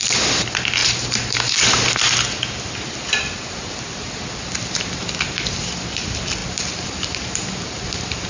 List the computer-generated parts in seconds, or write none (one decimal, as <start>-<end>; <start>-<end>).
0.8-1.5; 6.4-8.3